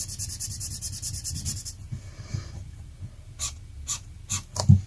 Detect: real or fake real